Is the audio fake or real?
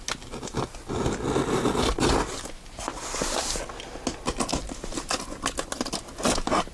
real